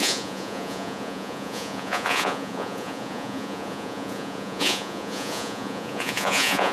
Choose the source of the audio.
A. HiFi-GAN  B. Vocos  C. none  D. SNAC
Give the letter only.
B